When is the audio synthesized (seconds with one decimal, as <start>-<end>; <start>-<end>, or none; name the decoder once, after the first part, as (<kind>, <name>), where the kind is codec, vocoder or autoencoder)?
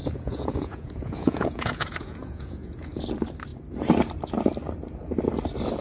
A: 0.0-3.0 (vocoder, Vocos)